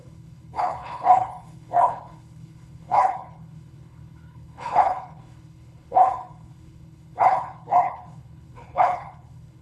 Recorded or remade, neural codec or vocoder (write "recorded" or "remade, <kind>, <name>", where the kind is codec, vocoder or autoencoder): remade, codec, HILCodec